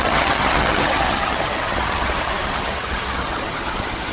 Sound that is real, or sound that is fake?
fake